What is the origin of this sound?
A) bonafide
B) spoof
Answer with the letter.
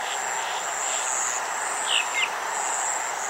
A